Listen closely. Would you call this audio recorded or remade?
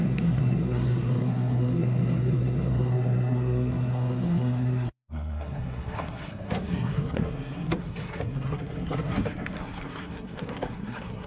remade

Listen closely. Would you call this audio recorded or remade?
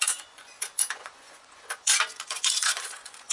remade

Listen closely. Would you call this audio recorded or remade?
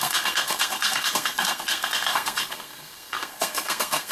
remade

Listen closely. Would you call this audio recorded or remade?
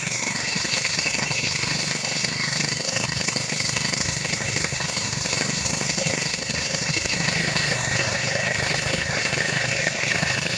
remade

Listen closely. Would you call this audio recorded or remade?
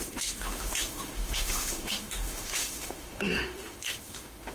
remade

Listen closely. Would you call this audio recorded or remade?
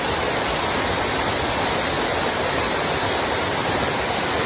recorded